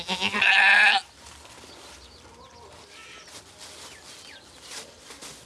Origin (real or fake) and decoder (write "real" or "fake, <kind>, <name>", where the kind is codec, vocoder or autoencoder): real